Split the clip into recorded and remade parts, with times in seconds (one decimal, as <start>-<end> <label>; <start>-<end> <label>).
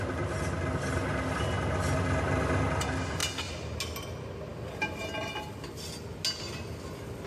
0.0-7.3 recorded